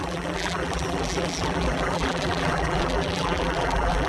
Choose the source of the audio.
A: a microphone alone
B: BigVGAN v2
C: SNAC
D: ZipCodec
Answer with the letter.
B